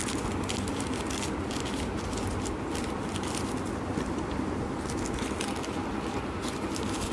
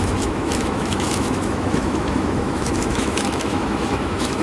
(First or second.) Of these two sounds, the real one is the first